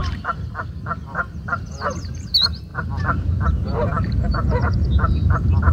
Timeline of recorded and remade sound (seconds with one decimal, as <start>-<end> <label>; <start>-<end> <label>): 0.0-1.0 recorded; 1.0-2.7 remade; 2.7-3.4 recorded; 3.4-5.7 remade